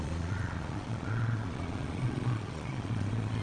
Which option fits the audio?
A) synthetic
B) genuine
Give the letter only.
A